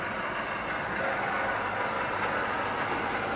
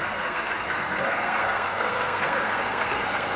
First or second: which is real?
first